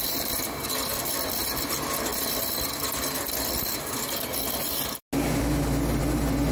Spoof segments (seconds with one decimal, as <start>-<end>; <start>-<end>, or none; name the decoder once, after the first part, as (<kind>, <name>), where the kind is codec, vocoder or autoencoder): 0.0-1.4 (vocoder, BigVGAN v2)